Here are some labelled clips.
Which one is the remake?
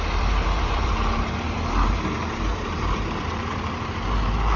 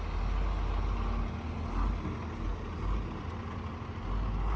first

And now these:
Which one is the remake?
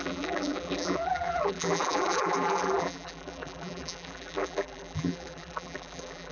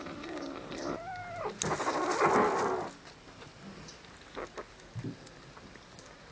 first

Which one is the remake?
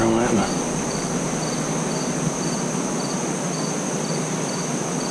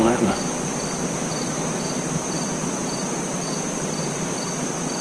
second